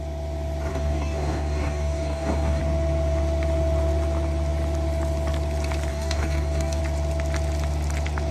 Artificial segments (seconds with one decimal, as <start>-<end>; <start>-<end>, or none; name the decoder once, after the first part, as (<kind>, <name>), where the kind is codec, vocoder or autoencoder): 0.7-2.6 (codec, DAC); 5.9-6.8